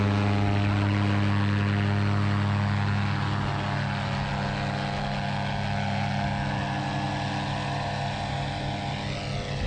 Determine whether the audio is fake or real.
real